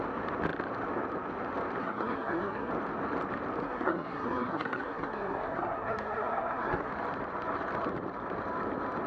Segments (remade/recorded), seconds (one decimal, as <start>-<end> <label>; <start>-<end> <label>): 0.0-1.8 recorded; 1.8-2.7 remade; 2.7-3.6 recorded; 3.6-6.9 remade; 6.9-9.1 recorded